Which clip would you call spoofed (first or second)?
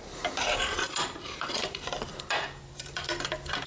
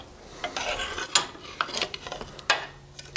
first